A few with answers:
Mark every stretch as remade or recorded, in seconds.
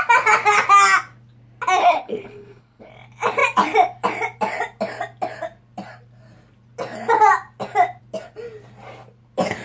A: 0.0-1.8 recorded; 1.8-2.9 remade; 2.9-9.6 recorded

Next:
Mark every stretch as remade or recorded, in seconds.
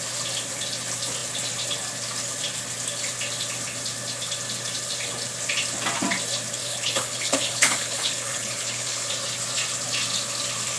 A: 0.0-6.6 recorded; 6.6-9.1 remade; 9.1-10.8 recorded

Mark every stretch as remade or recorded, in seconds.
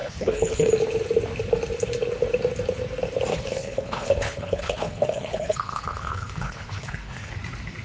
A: 0.0-0.7 remade; 0.7-3.3 recorded; 3.3-7.3 remade; 7.3-7.8 recorded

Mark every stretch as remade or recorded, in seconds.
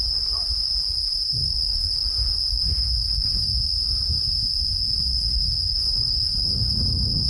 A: 0.0-1.4 recorded; 1.4-2.1 remade; 2.1-5.1 recorded; 5.1-6.3 remade; 6.3-7.3 recorded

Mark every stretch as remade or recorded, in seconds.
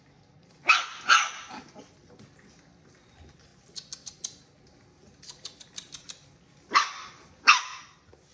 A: 0.0-8.3 recorded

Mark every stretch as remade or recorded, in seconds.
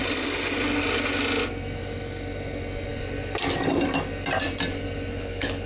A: 0.0-5.1 recorded; 5.1-5.7 remade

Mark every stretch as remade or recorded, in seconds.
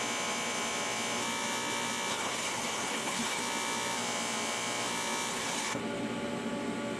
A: 0.0-2.1 recorded; 2.1-3.4 remade; 3.4-5.3 recorded; 5.3-5.8 remade; 5.8-7.0 recorded